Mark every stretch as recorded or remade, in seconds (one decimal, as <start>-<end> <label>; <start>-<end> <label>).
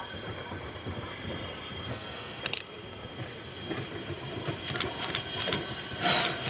0.0-1.9 recorded; 1.9-2.4 remade; 2.4-6.5 recorded